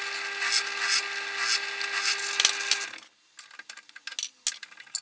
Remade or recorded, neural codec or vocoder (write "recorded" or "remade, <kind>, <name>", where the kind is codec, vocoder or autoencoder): recorded